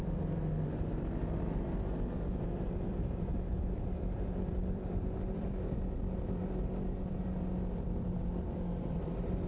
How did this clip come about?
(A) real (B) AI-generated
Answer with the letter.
B